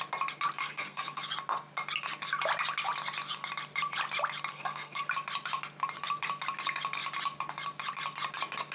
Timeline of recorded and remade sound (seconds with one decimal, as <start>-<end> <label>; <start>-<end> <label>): 0.0-0.6 recorded; 0.6-1.2 remade; 1.2-4.5 recorded; 4.5-5.0 remade; 5.0-8.7 recorded